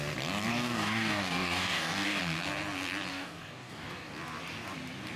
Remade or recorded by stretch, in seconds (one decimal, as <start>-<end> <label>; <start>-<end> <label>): 0.0-0.5 recorded; 0.5-2.2 remade; 2.2-3.1 recorded; 3.1-4.1 remade; 4.1-5.2 recorded

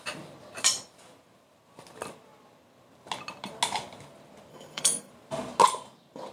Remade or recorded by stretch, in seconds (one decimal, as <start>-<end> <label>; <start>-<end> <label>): 0.0-4.5 recorded; 4.5-5.1 remade; 5.1-6.3 recorded